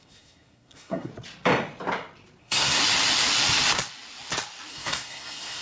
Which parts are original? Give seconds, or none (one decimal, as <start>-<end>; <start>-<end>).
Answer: 1.1-2.4; 2.8-4.7